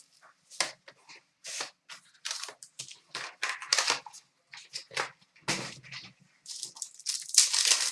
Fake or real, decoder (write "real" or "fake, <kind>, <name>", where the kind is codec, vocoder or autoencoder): real